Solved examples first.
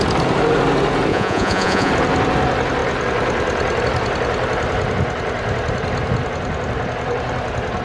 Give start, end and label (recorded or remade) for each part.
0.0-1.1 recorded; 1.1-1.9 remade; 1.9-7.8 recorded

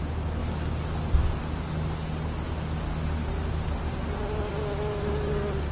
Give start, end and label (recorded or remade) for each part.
0.0-5.7 recorded

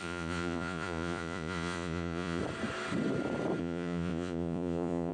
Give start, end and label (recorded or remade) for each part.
0.0-2.4 remade; 2.4-3.6 recorded; 3.6-5.1 remade

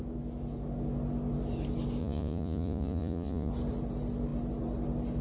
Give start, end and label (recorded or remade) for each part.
0.0-2.0 recorded; 2.0-3.5 remade; 3.5-5.2 recorded

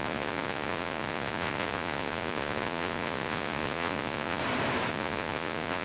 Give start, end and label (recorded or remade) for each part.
0.0-4.4 remade; 4.4-4.9 recorded; 4.9-5.8 remade

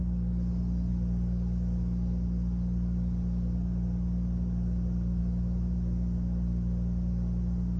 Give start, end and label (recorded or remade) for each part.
0.0-7.8 recorded

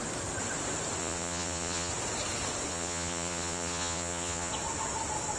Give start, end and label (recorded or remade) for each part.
0.0-1.0 recorded; 1.0-1.9 remade; 1.9-2.7 recorded; 2.7-4.5 remade; 4.5-5.4 recorded

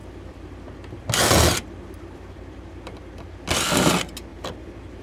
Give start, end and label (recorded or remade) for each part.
0.0-5.0 recorded